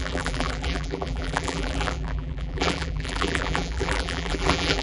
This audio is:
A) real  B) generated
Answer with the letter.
B